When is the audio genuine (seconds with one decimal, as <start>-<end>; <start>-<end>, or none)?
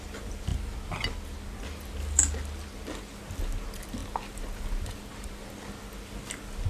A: 0.0-6.7